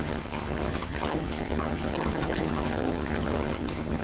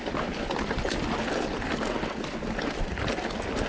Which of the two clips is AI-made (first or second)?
first